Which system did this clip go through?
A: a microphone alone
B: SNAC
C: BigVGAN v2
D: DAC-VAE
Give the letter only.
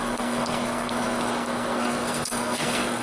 B